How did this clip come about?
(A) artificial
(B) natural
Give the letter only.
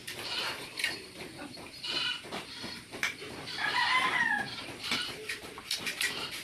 A